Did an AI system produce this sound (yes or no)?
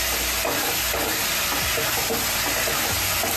no